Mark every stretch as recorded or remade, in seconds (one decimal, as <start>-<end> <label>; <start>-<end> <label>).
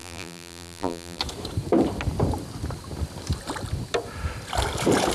0.0-1.2 remade; 1.2-5.1 recorded